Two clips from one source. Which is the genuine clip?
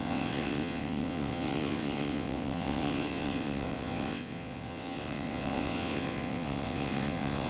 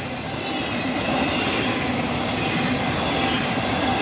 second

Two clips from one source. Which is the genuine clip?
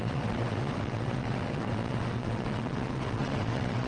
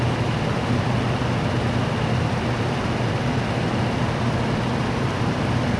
second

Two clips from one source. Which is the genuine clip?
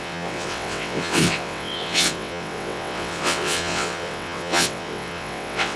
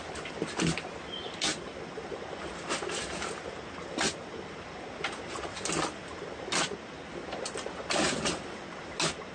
second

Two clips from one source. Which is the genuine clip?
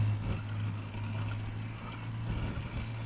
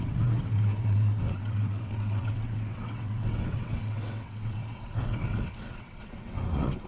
first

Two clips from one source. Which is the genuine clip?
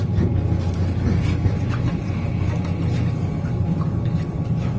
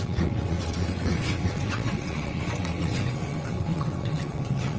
first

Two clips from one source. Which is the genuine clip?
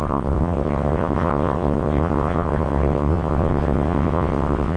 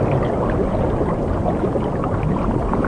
second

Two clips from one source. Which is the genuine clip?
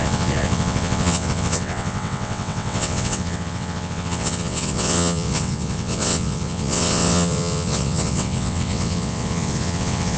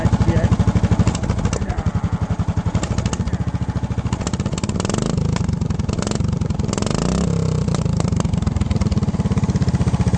second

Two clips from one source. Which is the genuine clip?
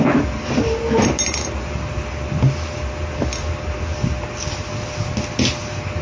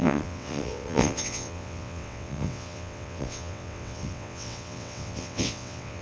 first